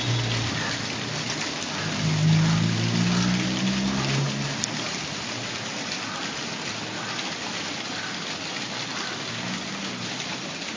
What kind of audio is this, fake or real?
real